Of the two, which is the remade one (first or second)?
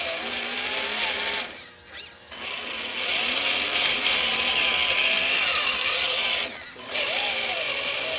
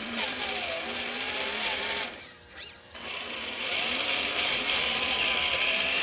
second